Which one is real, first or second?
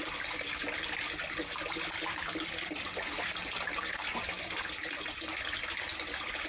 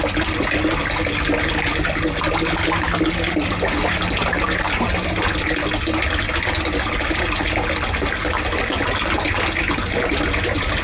second